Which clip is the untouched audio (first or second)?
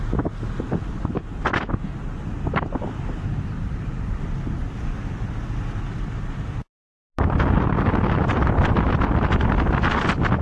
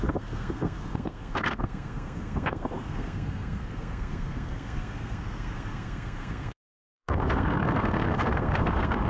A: first